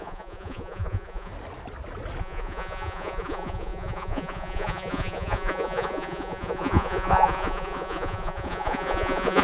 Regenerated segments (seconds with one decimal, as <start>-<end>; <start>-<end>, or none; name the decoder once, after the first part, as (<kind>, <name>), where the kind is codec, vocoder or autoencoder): 0.0-1.3 (vocoder, Vocos); 2.2-9.4

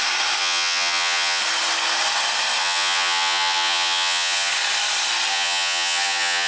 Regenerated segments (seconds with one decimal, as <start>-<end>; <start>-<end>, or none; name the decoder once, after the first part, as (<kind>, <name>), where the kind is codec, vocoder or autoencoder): 0.4-1.4 (vocoder, HiFi-GAN); 2.6-4.5; 5.3-6.5

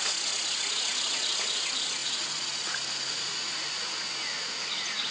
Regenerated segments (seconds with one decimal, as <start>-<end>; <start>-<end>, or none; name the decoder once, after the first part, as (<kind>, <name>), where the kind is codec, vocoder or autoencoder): 0.0-5.1 (vocoder, Vocos)

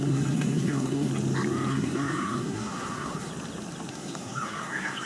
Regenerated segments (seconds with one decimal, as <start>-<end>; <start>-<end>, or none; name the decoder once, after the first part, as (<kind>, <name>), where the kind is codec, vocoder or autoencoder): 0.0-1.1 (codec, SNAC); 1.7-3.3; 3.9-5.1

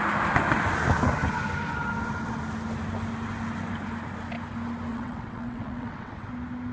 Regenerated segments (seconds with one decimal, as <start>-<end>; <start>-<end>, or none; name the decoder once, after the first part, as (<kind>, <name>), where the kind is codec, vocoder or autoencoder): 4.9-6.3 (vocoder, WaveNeXt)

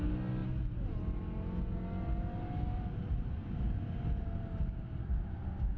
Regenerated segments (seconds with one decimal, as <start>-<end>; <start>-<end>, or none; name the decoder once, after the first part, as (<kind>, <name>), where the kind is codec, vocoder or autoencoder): none

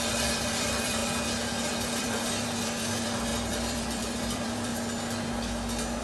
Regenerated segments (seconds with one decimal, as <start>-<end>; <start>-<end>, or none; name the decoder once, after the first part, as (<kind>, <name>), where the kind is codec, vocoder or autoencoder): 0.0-1.0 (vocoder, BigVGAN v2); 1.7-4.7

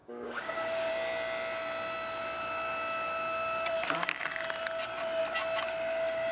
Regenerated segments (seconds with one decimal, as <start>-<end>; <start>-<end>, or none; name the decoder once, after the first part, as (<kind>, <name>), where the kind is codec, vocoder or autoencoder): 0.0-0.9 (codec, DAC)